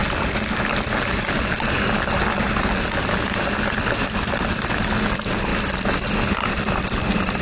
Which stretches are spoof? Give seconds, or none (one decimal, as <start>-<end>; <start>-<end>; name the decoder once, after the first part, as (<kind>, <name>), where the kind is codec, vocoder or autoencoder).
none